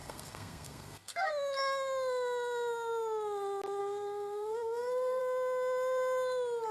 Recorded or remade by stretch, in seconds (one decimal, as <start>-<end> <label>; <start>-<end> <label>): 0.0-1.3 remade; 1.3-3.8 recorded; 3.8-5.2 remade; 5.2-6.7 recorded